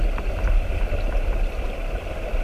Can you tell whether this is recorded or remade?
recorded